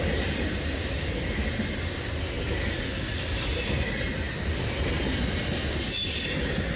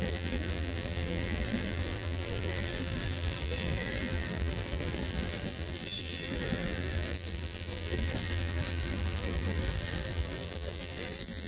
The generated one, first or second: second